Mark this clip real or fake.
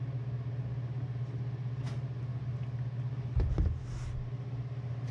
real